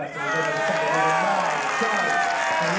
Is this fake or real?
real